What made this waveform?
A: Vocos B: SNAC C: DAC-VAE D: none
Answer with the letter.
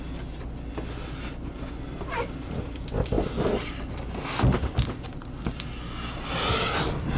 D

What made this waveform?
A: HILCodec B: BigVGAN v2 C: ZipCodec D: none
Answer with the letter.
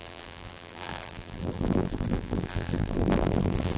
B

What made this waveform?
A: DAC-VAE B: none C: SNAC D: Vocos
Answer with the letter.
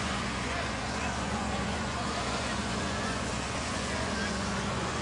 D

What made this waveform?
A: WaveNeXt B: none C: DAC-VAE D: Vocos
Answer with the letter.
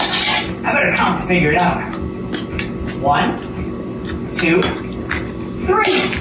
B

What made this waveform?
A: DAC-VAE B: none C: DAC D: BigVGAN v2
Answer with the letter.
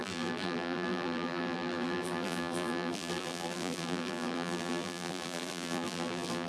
D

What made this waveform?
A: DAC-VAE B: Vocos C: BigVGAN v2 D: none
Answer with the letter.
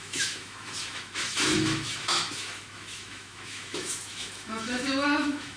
A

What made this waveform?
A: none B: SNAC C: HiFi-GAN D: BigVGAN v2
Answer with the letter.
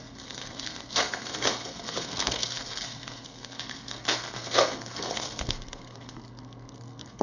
B